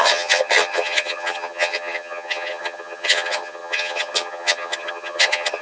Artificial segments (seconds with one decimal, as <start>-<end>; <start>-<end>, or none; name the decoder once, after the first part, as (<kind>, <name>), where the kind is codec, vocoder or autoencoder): 0.0-5.6 (vocoder, HiFi-GAN)